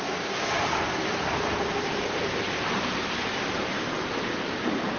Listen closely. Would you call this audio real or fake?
fake